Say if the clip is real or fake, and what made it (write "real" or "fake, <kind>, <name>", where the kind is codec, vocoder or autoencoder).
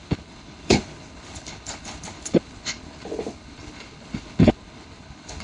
fake, codec, HILCodec